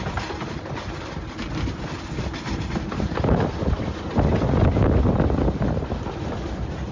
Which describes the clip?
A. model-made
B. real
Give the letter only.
B